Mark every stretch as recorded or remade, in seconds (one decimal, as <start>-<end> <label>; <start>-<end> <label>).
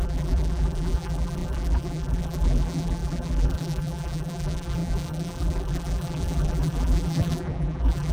0.0-8.1 remade